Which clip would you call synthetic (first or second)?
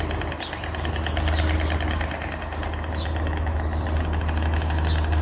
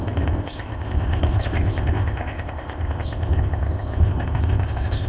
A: second